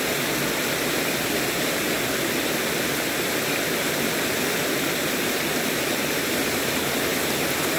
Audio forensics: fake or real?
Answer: real